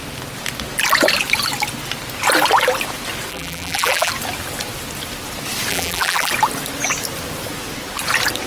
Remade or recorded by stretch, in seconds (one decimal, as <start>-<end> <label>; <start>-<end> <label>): 0.0-3.3 recorded; 3.3-4.1 remade; 4.1-5.7 recorded; 5.7-6.3 remade; 6.3-8.5 recorded